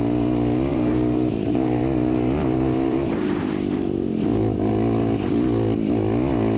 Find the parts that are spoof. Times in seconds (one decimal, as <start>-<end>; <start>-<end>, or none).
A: 0.7-4.7

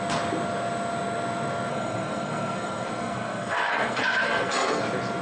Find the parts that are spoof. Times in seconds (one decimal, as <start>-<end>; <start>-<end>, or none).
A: 1.7-4.8

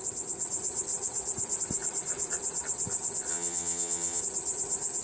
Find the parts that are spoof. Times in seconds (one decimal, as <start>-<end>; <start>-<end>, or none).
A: 3.3-4.2

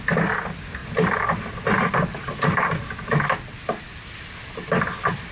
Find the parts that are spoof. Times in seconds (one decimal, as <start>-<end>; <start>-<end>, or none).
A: none

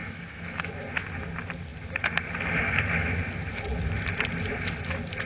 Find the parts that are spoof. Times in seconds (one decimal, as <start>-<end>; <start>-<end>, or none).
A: 0.0-0.7